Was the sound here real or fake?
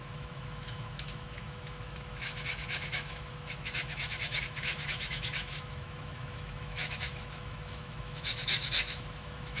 fake